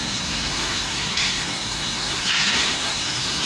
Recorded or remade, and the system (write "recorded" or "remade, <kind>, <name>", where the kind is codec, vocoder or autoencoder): remade, codec, SNAC